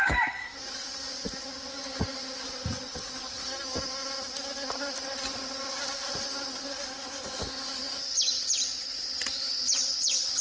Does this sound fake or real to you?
real